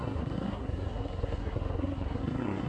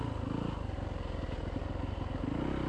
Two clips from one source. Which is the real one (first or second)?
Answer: second